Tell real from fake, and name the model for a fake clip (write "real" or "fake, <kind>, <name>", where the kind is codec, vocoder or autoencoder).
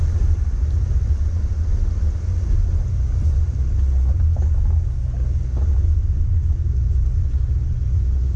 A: real